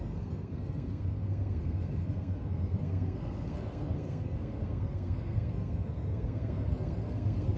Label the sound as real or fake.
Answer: fake